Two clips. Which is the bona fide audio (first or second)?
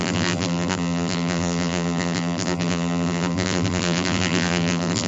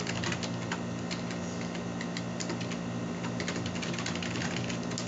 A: second